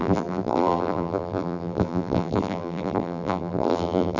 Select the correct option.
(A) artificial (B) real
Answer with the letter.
A